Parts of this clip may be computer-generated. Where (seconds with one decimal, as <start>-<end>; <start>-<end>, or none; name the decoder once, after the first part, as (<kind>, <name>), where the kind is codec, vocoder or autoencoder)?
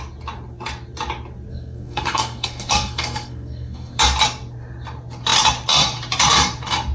1.5-4.0 (codec, SNAC)